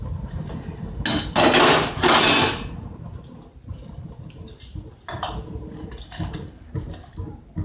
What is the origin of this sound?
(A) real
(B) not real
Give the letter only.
A